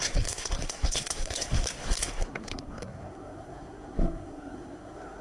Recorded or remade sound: remade